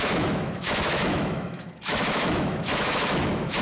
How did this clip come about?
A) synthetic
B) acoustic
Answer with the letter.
A